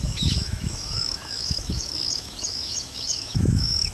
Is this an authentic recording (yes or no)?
no